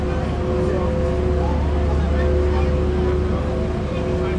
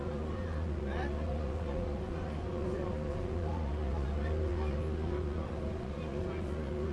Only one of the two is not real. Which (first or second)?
second